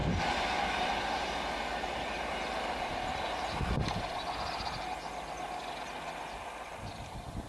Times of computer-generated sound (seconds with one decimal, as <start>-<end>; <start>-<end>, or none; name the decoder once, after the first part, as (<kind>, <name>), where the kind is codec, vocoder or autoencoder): none